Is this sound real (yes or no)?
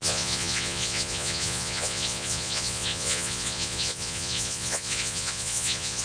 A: no